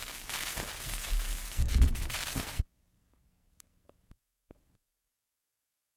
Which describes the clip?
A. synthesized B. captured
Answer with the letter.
A